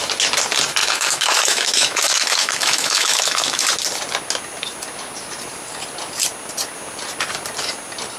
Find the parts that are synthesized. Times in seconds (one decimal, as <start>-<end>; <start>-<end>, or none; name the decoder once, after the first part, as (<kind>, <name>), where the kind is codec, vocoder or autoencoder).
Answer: 0.8-3.7 (autoencoder, DAC-VAE)